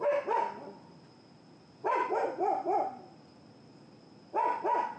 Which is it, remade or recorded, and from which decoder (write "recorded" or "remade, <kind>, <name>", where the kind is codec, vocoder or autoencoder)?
recorded